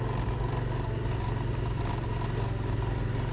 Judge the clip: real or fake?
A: real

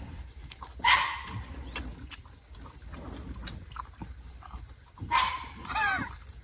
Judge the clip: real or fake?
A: fake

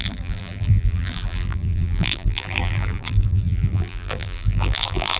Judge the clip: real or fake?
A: fake